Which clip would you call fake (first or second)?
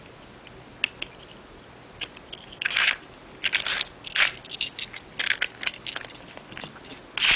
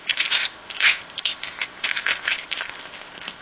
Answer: second